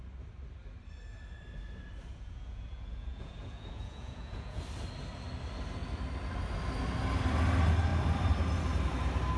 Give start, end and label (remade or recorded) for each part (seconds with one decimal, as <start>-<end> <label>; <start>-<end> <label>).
0.0-2.1 recorded; 2.1-4.6 remade; 4.6-9.4 recorded